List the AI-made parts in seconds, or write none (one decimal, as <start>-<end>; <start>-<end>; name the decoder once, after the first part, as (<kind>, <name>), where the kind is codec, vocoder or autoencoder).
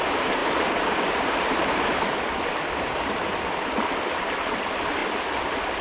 none